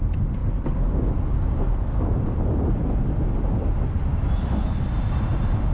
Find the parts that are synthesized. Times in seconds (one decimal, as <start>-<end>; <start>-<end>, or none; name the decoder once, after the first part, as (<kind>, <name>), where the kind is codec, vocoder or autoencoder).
none